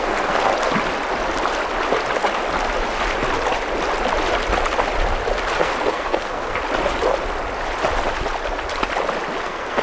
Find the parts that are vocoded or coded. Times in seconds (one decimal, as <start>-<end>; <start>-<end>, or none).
0.0-0.5; 5.6-6.6; 9.4-9.8